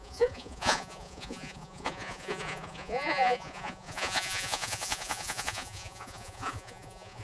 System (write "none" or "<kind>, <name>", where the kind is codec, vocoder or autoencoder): vocoder, Vocos